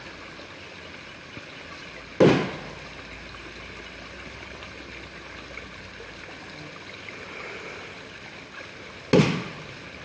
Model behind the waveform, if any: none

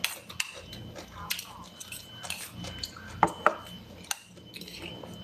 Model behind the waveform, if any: none